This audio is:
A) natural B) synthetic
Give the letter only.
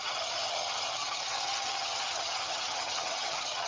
B